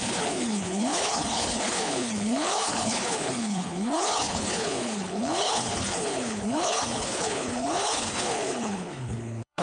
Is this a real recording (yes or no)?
no